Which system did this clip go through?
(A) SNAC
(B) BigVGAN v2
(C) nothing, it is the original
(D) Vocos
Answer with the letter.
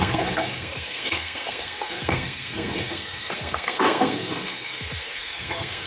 A